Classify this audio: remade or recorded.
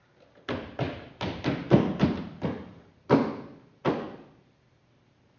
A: recorded